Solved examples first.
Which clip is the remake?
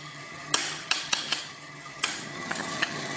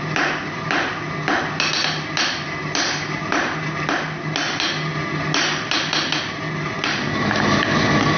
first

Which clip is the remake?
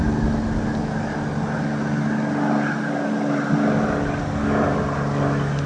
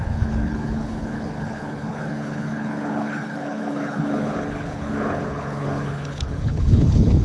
second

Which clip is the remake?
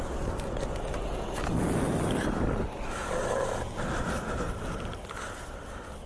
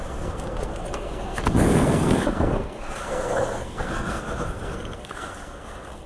second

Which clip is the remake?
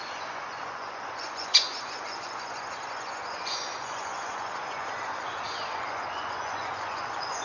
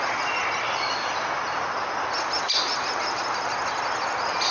first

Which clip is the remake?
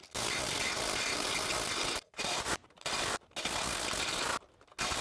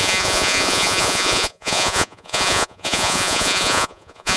second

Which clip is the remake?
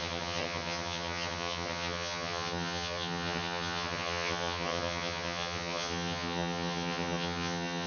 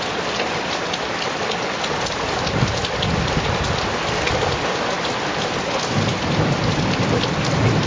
first